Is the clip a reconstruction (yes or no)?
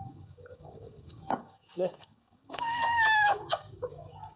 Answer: yes